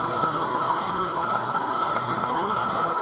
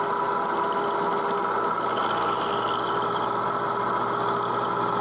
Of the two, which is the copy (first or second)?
first